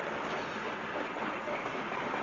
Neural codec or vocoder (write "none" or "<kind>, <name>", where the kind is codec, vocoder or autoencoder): none